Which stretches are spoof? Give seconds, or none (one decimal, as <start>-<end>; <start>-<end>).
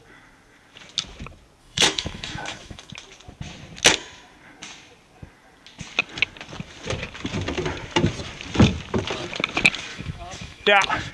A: 1.6-2.9; 9.9-11.1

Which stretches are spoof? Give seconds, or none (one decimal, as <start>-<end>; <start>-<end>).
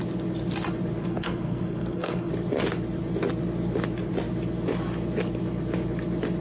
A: 1.0-2.3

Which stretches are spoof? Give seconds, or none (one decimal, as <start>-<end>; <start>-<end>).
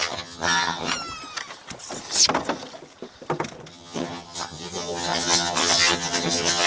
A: 0.0-0.9; 3.7-6.7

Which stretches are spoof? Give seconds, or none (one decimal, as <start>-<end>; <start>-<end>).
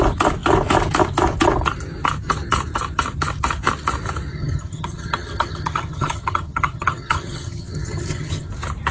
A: 4.3-8.5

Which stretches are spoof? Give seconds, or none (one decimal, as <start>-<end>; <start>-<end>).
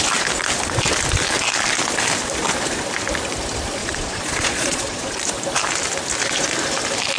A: 3.8-5.2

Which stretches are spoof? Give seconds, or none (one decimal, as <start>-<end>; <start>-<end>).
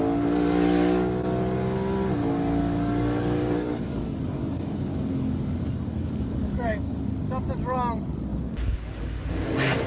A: 2.2-7.0; 8.3-9.2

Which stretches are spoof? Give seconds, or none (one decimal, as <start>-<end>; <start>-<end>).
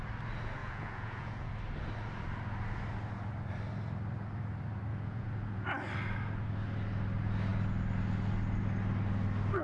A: 0.6-1.5; 4.9-5.6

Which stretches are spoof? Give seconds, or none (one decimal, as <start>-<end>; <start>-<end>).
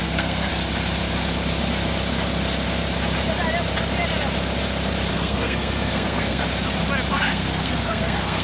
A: 0.0-0.5; 5.1-6.4; 7.1-8.4